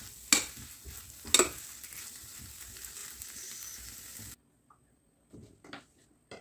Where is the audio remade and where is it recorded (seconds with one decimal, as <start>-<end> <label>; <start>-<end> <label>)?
0.0-6.4 recorded